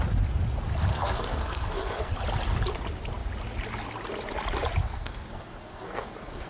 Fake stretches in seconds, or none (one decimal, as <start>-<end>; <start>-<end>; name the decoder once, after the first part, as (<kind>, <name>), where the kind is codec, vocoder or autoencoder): 0.9-2.1 (codec, SNAC); 4.8-6.5